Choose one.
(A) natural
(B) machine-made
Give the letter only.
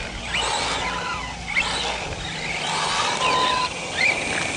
A